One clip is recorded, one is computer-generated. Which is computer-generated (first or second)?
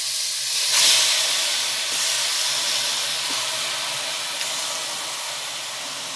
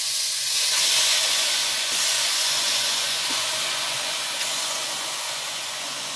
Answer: second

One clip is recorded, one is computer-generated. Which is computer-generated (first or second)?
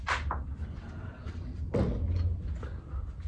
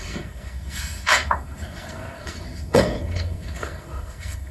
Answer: second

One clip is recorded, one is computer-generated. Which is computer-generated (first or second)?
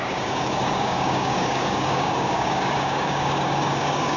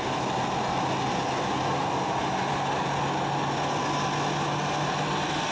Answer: first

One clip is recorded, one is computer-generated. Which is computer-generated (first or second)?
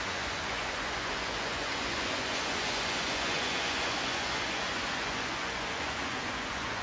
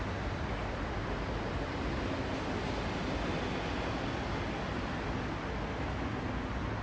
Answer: first